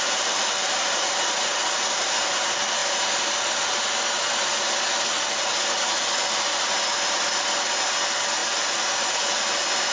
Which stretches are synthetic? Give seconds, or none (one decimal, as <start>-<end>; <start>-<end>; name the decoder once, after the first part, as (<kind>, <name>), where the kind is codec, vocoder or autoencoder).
none

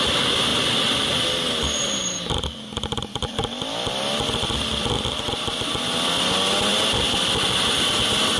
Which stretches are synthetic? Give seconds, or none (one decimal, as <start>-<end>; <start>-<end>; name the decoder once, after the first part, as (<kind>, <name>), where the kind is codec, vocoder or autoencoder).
none

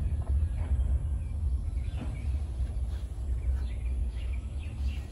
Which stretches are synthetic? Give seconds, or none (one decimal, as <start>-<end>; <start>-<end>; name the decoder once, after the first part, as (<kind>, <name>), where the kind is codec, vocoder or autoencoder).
4.0-4.6 (autoencoder, DAC-VAE)

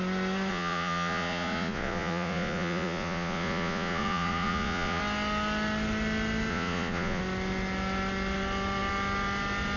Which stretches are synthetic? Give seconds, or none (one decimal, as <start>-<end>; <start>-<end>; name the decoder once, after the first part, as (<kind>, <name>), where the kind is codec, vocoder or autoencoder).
0.5-5.0 (vocoder, Vocos); 6.5-7.2

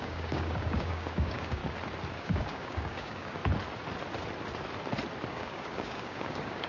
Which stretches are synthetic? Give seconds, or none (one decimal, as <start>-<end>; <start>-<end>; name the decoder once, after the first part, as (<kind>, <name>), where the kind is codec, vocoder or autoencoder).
0.0-1.6 (codec, DAC); 2.1-3.4; 5.3-6.7

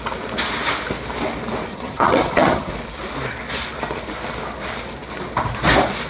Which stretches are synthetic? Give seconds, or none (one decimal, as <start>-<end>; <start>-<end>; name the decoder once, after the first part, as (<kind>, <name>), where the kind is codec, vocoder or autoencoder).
1.7-2.7 (vocoder, HiFi-GAN)

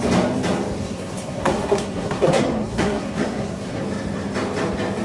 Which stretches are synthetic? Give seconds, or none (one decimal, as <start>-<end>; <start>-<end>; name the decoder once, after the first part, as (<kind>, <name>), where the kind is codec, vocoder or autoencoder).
0.8-3.8 (codec, SNAC)